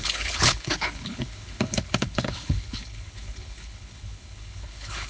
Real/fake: fake